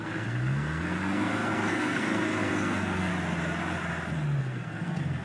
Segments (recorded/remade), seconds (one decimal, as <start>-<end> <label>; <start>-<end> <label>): 0.0-3.1 remade; 3.1-4.4 recorded; 4.4-5.2 remade